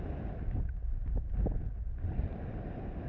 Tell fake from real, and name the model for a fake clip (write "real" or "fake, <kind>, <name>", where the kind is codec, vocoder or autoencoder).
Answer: real